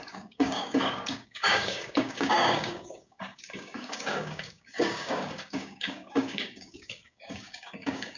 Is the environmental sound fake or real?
fake